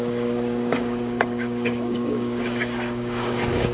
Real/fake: fake